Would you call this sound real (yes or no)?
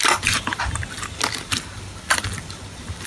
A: no